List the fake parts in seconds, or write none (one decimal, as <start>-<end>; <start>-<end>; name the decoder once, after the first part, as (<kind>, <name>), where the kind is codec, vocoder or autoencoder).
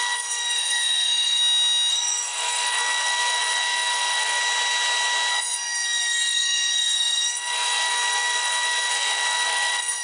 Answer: 0.0-1.4 (codec, SNAC); 1.9-4.4; 5.3-10.0